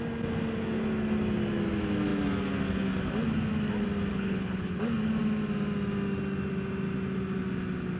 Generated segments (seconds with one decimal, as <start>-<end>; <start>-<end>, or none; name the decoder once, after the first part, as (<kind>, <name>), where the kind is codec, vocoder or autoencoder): 4.1-4.8 (codec, HILCodec)